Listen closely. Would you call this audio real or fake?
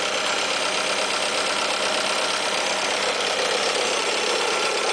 real